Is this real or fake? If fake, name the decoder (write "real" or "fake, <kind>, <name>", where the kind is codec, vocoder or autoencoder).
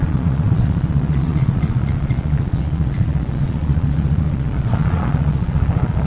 fake, vocoder, Vocos